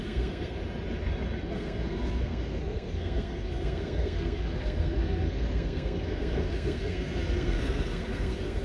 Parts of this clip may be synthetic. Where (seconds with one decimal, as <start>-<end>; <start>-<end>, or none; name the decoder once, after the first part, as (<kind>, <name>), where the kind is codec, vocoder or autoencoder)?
0.0-0.6 (codec, SNAC); 1.5-8.6